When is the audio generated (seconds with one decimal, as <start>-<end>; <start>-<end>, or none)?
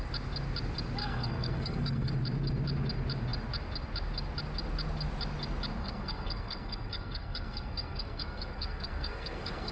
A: 1.0-2.1; 5.8-9.7